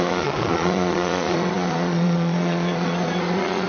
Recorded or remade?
remade